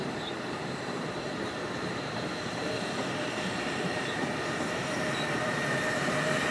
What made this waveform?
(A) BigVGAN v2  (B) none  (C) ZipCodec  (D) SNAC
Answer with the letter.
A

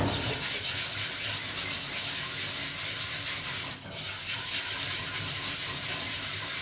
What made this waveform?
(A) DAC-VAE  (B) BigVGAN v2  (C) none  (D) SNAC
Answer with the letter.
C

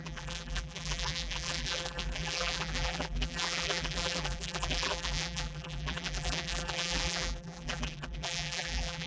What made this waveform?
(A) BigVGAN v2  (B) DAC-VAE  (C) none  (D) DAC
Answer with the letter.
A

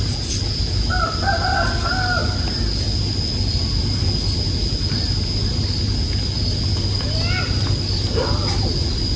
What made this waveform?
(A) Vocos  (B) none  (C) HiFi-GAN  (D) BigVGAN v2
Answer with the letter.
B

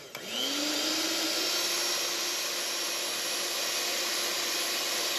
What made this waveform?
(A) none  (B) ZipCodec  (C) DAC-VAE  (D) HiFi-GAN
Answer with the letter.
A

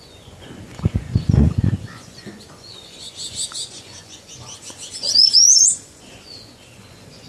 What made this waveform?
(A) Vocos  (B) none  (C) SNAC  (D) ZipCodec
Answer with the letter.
A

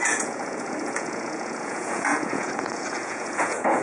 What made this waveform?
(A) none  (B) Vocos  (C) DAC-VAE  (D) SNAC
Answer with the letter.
B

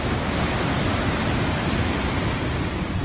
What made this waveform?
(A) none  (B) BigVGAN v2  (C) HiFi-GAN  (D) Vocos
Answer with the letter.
A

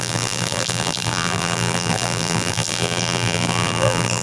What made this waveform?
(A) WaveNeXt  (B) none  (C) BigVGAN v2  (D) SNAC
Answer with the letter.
C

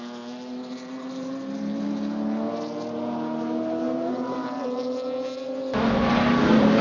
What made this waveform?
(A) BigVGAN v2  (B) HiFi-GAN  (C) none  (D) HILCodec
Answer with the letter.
C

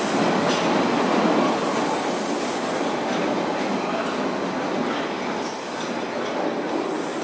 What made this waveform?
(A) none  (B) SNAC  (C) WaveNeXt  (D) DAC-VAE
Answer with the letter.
A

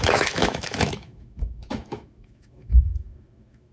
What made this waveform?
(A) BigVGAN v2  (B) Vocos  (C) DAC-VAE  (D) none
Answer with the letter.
C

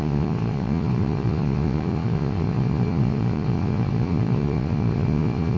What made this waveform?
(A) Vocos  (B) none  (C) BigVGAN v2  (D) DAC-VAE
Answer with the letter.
A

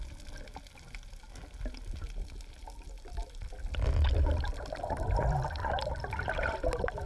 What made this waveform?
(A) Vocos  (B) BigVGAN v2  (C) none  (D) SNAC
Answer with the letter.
C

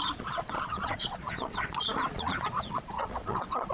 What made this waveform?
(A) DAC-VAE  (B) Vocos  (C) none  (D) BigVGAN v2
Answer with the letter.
B